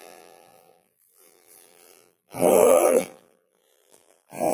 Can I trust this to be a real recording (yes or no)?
no